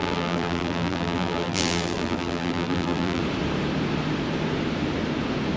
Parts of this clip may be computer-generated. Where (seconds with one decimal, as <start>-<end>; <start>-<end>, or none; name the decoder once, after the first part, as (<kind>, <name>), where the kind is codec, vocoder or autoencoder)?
0.0-3.2 (vocoder, BigVGAN v2)